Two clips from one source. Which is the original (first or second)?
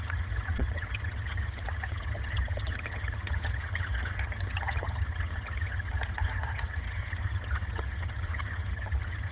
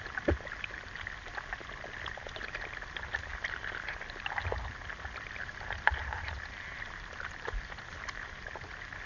second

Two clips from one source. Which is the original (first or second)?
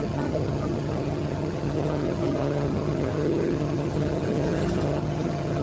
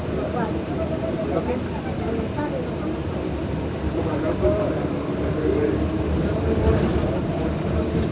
second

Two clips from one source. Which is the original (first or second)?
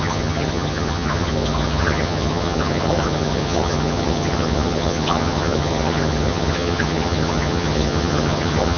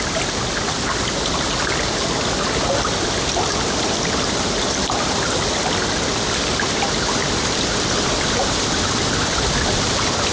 second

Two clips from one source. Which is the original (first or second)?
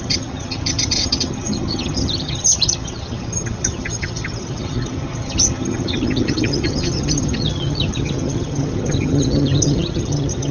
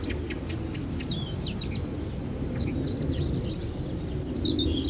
second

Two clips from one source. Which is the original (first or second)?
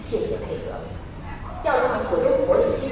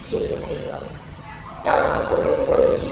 first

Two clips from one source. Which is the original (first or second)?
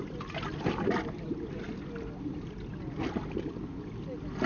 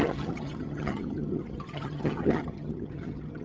first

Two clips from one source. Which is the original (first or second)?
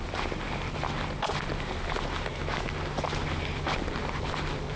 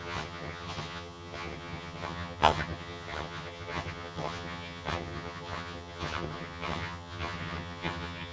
first